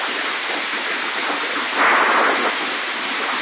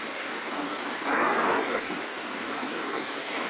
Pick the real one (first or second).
first